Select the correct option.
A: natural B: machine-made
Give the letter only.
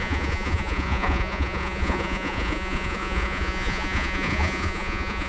B